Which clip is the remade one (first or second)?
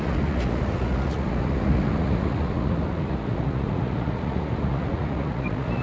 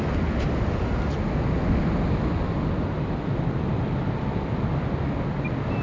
first